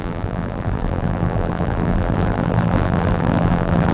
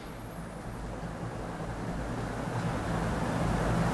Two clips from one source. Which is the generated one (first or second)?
first